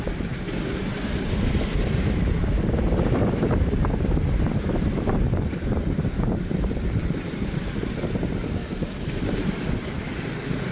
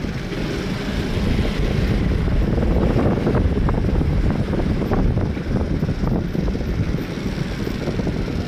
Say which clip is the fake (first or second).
first